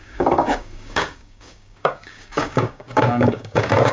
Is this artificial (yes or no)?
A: yes